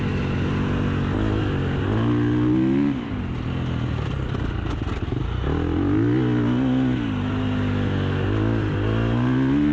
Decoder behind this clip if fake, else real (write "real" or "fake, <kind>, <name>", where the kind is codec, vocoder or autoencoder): real